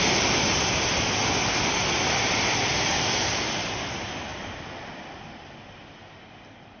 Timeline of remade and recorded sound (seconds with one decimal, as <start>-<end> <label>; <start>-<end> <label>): 0.0-6.8 recorded